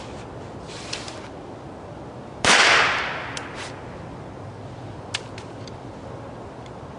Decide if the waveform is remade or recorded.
recorded